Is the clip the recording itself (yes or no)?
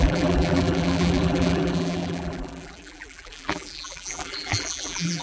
no